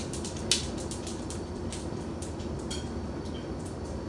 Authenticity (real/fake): real